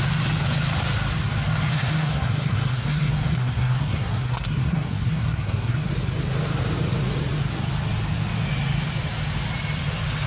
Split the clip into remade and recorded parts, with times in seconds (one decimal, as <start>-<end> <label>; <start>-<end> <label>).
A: 0.0-1.7 recorded; 1.7-5.9 remade; 5.9-10.3 recorded

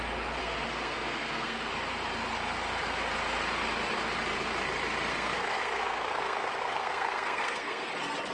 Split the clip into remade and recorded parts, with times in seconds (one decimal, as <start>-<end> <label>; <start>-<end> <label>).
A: 0.0-0.4 recorded; 0.4-1.7 remade; 1.7-5.1 recorded; 5.1-7.9 remade; 7.9-8.3 recorded

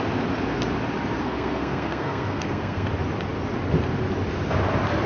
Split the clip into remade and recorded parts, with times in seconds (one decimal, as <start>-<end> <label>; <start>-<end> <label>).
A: 0.0-1.2 recorded; 1.2-2.9 remade; 2.9-5.1 recorded

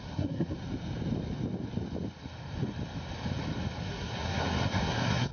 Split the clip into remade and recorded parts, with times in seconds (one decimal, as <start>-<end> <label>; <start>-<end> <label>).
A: 0.0-0.6 remade; 0.6-3.8 recorded; 3.8-5.3 remade

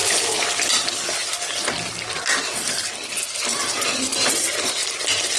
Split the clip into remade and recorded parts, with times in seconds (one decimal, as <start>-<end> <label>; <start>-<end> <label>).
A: 0.0-5.4 recorded

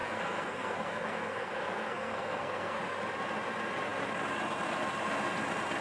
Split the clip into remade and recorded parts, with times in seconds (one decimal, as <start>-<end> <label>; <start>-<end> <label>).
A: 0.0-2.8 remade; 2.8-5.8 recorded